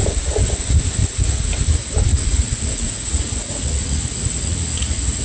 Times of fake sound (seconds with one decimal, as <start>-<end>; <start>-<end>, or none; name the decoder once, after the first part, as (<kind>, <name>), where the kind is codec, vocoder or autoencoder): 1.0-1.5 (vocoder, Vocos); 2.1-5.2